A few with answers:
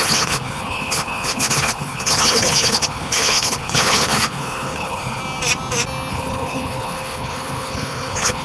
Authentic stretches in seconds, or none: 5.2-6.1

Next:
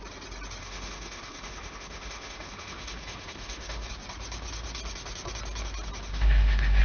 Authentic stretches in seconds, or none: 0.0-0.6; 3.9-6.1

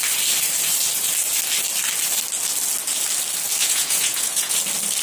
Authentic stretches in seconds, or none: 0.0-3.6; 4.6-5.0

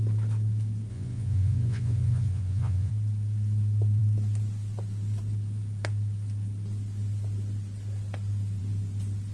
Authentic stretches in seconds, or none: 0.0-0.9; 2.9-9.3

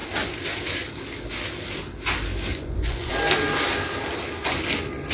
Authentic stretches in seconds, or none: 0.0-2.5; 3.1-5.1

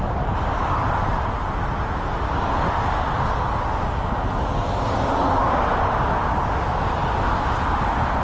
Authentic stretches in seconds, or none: 0.0-8.2

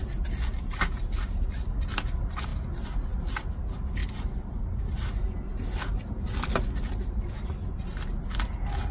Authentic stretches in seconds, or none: 0.0-8.9